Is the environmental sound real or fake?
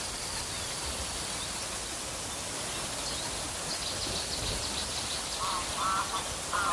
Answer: real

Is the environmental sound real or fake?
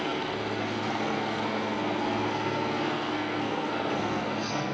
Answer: fake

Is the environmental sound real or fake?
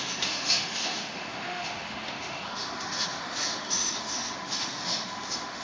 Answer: fake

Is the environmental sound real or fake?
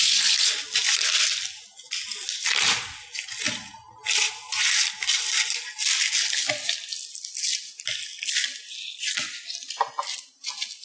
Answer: real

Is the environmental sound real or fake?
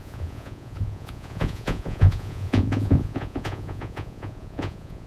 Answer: fake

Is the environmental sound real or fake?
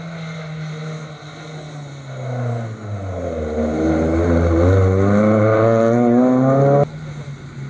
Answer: real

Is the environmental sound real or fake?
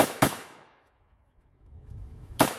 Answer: fake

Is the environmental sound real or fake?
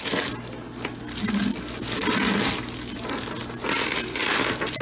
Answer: real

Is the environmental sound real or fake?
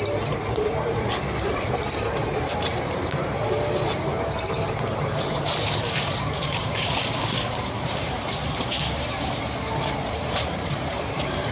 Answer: fake